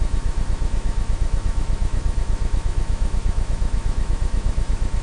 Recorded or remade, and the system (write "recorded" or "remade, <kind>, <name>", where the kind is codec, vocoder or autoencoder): remade, autoencoder, DAC-VAE